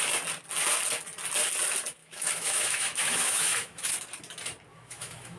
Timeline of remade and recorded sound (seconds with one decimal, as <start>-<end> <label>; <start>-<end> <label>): 0.0-2.0 recorded; 2.0-3.9 remade; 3.9-4.7 recorded; 4.7-5.4 remade